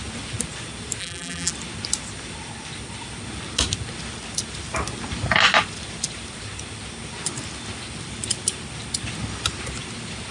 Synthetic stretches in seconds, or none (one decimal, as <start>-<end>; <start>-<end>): 1.0-1.5